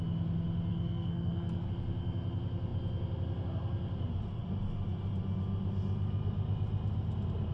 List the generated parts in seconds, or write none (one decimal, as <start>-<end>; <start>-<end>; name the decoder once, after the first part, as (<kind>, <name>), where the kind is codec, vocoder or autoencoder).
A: 0.7-1.7 (codec, SNAC)